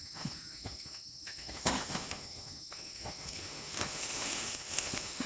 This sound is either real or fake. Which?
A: fake